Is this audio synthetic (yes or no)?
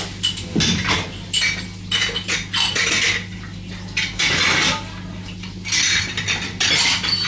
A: no